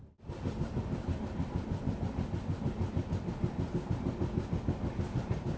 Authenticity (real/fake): real